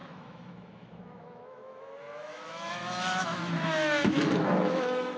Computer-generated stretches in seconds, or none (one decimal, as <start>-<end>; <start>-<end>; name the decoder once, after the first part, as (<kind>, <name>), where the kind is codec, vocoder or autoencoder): 0.0-5.2 (autoencoder, DAC-VAE)